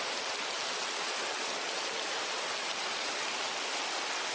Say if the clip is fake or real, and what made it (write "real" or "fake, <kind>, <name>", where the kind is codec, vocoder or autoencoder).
real